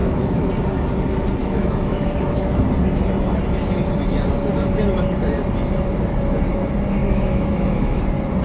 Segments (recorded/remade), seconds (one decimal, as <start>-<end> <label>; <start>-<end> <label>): 0.0-0.5 remade; 0.5-1.4 recorded; 1.4-2.6 remade; 2.6-7.0 recorded; 7.0-8.0 remade; 8.0-8.4 recorded